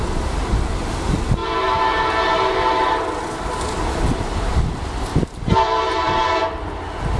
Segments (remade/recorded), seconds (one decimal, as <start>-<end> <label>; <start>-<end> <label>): 0.0-5.1 recorded; 5.1-6.1 remade; 6.1-7.2 recorded